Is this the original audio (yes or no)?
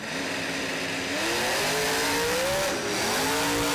yes